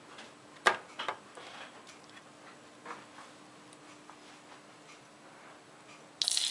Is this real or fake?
real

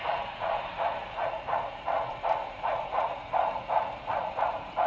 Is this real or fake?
fake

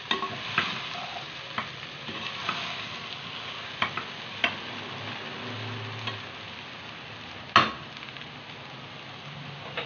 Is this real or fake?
real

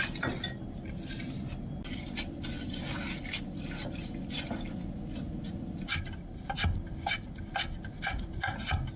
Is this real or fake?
real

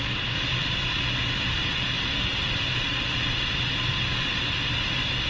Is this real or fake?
real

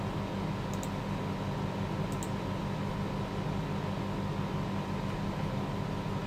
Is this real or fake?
real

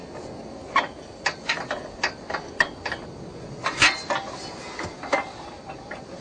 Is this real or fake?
real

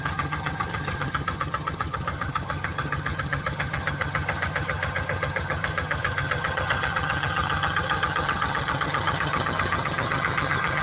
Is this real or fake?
fake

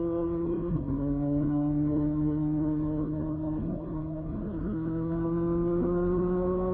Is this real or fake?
fake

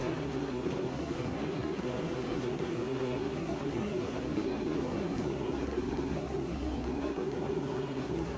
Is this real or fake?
fake